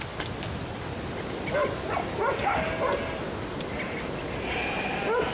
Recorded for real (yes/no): yes